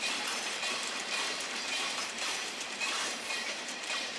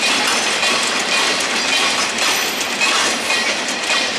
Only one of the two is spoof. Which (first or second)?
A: first